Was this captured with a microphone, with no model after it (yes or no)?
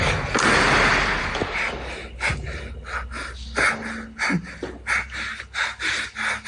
yes